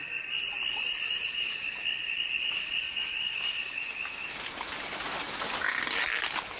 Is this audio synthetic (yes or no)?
no